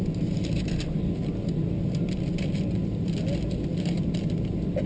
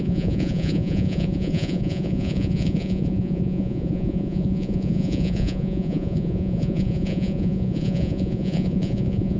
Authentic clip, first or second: first